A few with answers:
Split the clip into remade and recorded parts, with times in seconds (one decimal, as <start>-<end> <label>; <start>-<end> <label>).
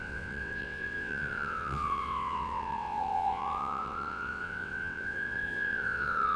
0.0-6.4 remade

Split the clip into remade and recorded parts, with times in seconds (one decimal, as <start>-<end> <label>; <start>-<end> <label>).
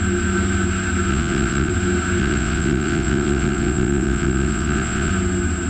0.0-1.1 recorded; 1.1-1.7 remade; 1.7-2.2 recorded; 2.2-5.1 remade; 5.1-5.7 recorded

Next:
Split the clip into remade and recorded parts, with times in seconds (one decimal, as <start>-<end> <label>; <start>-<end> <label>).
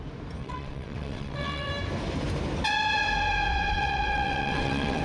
0.0-0.4 recorded; 0.4-1.7 remade; 1.7-3.5 recorded; 3.5-5.0 remade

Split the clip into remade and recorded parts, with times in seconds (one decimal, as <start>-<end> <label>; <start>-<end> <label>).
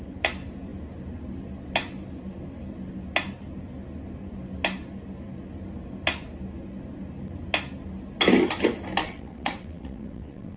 0.0-9.0 recorded; 9.0-10.6 remade